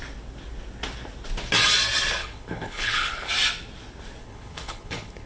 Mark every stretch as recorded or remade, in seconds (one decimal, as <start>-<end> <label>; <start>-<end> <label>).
0.0-2.2 recorded; 2.2-3.3 remade; 3.3-4.2 recorded; 4.2-5.3 remade